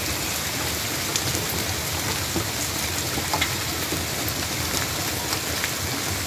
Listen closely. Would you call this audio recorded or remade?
recorded